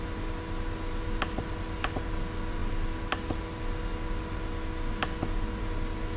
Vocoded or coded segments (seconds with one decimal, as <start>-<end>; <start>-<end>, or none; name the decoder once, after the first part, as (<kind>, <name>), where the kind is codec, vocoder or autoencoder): none